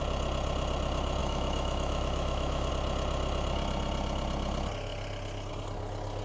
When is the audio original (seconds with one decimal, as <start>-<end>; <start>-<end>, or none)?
0.0-1.2; 2.7-6.2